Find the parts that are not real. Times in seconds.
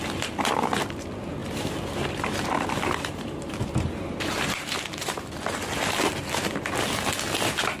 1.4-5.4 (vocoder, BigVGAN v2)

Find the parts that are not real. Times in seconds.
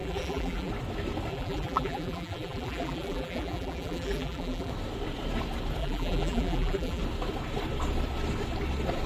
0.0-0.7 (vocoder, BigVGAN v2); 1.3-4.7; 5.8-7.0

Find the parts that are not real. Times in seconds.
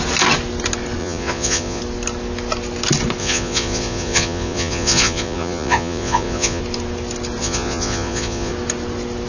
1.0-1.8 (vocoder, Vocos); 3.2-6.6; 7.4-8.5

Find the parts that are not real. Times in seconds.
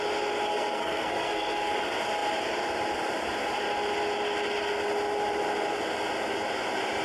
0.5-1.7 (codec, SNAC)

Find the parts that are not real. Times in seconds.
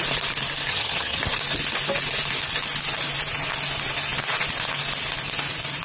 0.7-1.2 (vocoder, HiFi-GAN)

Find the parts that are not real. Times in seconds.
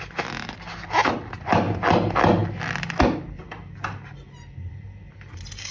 none